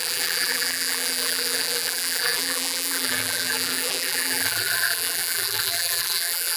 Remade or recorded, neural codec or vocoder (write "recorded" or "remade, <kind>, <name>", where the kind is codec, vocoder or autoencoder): remade, vocoder, BigVGAN v2